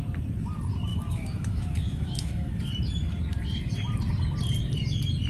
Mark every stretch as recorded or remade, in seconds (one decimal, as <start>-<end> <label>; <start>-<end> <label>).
0.0-0.9 recorded; 0.9-2.5 remade; 2.5-5.3 recorded